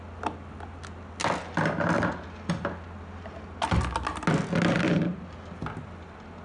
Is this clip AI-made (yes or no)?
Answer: no